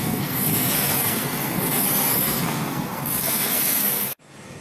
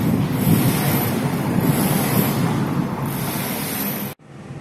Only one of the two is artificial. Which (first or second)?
first